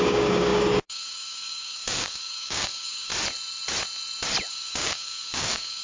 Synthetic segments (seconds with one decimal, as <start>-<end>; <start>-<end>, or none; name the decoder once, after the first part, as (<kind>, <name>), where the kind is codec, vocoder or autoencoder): 0.0-3.1 (codec, DAC); 4.5-5.8